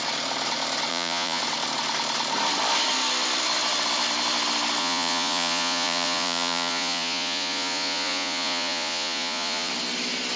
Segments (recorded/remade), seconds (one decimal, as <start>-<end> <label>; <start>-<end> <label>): 0.0-0.9 recorded; 0.9-1.4 remade; 1.4-4.8 recorded; 4.8-9.7 remade; 9.7-10.4 recorded